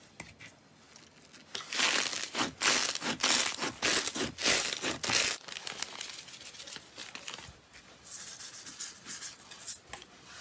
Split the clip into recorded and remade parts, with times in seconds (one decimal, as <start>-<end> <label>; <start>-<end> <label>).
0.0-10.4 recorded